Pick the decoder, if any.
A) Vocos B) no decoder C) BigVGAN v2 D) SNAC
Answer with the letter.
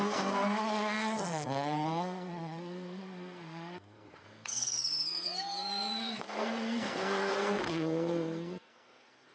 D